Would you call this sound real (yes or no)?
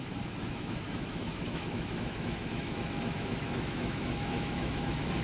no